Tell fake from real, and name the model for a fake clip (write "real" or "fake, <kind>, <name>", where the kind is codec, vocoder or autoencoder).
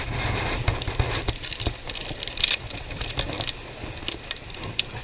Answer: real